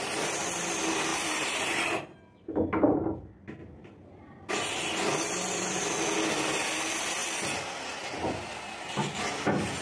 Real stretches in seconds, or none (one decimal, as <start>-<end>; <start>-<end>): 0.0-1.1; 1.7-9.8